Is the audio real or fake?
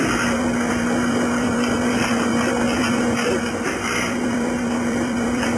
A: fake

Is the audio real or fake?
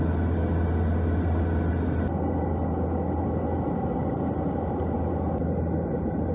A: real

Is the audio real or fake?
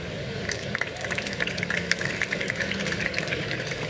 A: fake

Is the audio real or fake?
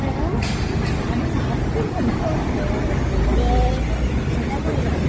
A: real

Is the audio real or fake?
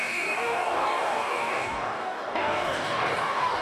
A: fake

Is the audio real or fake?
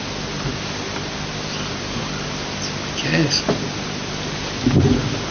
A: real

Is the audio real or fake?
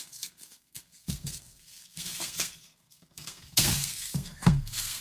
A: fake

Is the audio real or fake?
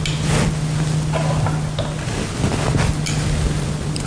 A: real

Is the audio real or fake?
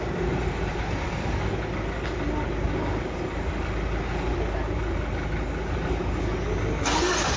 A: real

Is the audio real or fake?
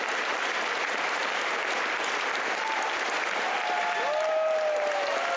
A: real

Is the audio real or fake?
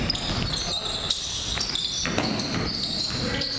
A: real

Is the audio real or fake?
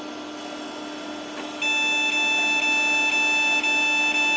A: real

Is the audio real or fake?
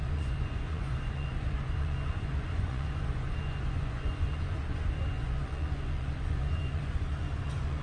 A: fake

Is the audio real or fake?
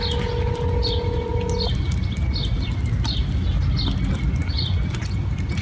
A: real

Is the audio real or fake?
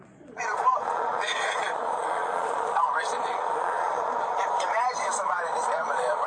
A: fake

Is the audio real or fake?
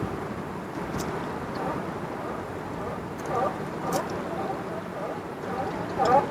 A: real